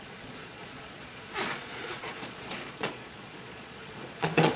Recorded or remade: remade